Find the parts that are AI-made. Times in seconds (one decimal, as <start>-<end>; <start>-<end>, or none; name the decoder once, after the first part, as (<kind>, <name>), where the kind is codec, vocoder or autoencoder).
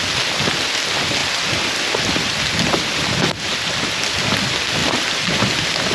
1.2-4.1 (vocoder, BigVGAN v2); 4.8-5.3